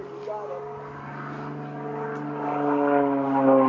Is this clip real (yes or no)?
yes